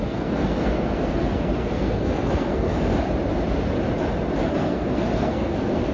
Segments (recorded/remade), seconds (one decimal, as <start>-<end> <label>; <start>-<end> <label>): 0.0-2.9 remade; 2.9-4.4 recorded; 4.4-5.9 remade